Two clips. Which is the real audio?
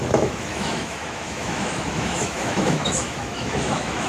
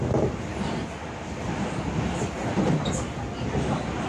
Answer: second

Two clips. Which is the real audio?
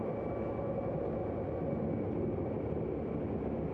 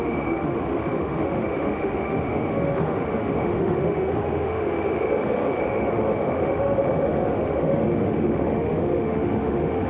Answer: first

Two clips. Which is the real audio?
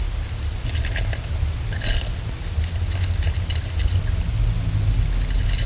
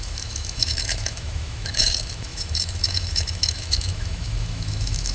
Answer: first